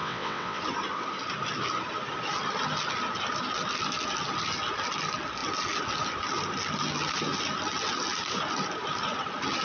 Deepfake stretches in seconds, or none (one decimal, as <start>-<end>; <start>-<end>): 0.0-0.6